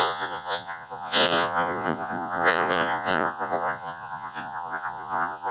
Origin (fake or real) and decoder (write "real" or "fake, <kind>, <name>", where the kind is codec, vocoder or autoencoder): fake, vocoder, Vocos